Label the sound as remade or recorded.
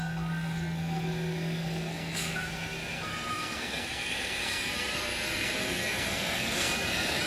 remade